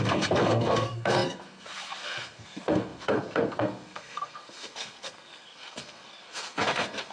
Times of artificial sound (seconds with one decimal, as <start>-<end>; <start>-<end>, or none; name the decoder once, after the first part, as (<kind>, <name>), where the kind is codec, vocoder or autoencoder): 0.0-7.1 (codec, SNAC)